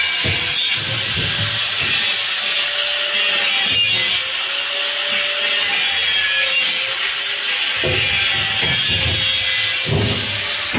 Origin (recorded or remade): recorded